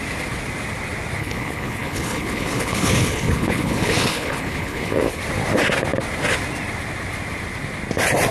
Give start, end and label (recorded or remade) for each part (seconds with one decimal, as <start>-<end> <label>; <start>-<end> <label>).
0.0-1.2 recorded; 1.2-5.2 remade; 5.2-8.3 recorded